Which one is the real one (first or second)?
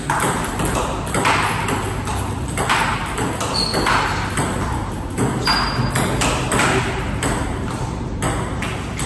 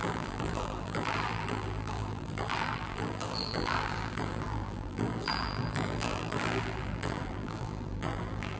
first